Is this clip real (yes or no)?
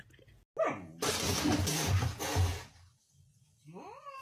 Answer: yes